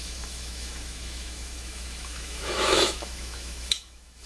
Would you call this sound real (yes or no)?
no